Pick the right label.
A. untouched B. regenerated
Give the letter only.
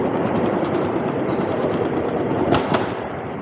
B